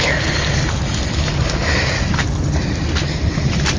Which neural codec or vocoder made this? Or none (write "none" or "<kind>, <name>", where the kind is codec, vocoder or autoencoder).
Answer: none